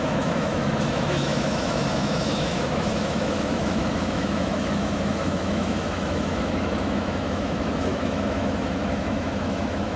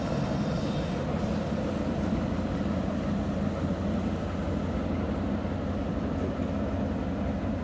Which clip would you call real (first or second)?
second